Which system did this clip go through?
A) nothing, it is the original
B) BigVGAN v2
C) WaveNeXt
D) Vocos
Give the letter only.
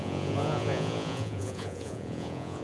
D